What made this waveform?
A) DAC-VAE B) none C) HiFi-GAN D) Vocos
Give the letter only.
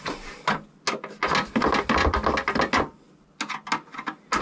B